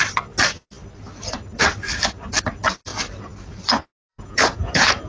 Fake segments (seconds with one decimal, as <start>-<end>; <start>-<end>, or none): 4.1-5.1